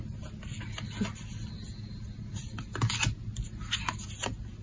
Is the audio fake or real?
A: real